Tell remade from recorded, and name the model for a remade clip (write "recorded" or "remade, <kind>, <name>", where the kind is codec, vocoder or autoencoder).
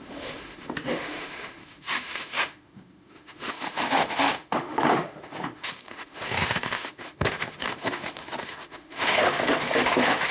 remade, autoencoder, DAC-VAE